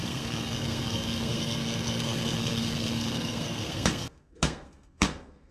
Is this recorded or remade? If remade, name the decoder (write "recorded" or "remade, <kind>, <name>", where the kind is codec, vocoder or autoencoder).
remade, codec, SNAC